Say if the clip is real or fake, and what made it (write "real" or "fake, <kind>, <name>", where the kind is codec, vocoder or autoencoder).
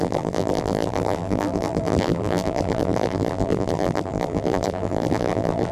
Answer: fake, vocoder, BigVGAN v2